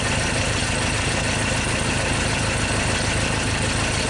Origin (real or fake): real